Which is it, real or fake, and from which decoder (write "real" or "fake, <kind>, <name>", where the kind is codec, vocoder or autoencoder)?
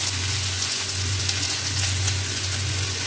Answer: fake, vocoder, Vocos